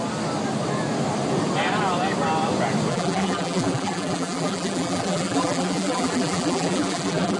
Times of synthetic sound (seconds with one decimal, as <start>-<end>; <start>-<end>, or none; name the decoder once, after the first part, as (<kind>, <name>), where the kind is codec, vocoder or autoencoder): 2.9-7.4 (vocoder, BigVGAN v2)